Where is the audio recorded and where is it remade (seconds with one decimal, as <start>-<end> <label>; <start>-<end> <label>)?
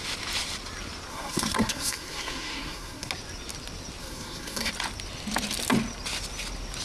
0.0-1.1 recorded; 1.1-3.1 remade; 3.1-4.0 recorded; 4.0-4.7 remade; 4.7-6.8 recorded